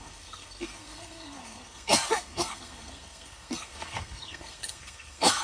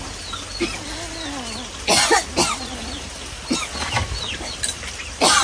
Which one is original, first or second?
second